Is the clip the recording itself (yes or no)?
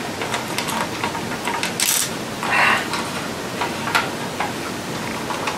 yes